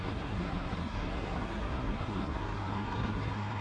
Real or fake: fake